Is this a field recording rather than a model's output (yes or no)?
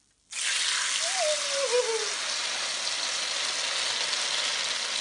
yes